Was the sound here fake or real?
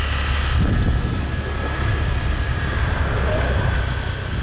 real